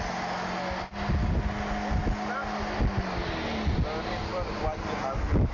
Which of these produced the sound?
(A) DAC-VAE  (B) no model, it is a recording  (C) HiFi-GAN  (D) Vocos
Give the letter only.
B